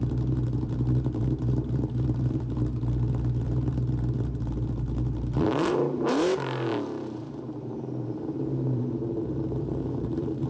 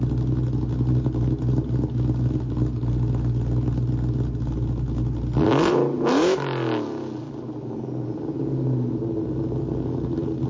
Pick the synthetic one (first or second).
first